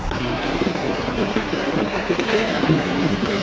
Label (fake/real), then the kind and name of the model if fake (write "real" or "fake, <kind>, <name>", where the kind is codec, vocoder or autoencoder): fake, codec, SNAC